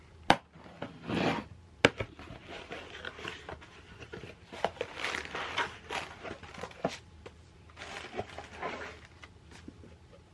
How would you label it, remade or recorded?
recorded